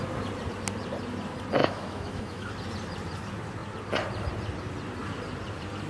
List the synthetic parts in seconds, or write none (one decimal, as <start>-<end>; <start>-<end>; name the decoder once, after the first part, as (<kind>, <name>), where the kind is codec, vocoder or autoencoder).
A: 1.6-2.5 (autoencoder, DAC-VAE)